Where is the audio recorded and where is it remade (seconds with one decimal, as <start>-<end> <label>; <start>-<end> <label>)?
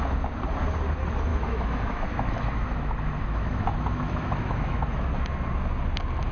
0.0-1.3 recorded; 1.3-5.1 remade; 5.1-6.3 recorded